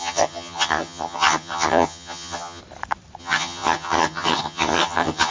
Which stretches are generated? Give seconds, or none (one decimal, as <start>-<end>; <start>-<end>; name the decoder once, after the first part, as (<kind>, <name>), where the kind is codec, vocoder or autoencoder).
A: 0.0-2.6 (vocoder, HiFi-GAN); 3.2-5.3